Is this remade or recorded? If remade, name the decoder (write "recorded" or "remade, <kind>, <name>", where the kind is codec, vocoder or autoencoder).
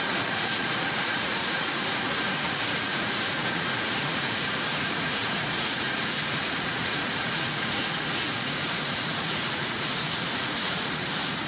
remade, vocoder, Vocos